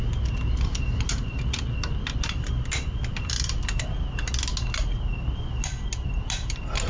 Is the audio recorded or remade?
recorded